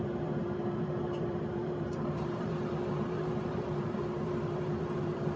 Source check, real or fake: fake